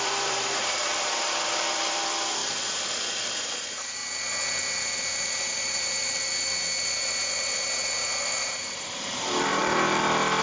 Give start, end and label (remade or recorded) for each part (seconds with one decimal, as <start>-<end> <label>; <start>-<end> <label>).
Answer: 0.0-2.4 remade; 2.4-3.4 recorded; 3.4-4.0 remade; 4.0-4.6 recorded; 4.6-6.3 remade; 6.3-8.2 recorded; 8.2-9.6 remade; 9.6-10.4 recorded